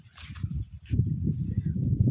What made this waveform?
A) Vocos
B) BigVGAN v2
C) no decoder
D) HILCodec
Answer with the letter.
B